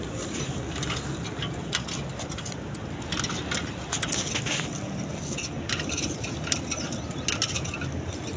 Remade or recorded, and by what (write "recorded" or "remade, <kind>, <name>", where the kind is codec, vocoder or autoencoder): recorded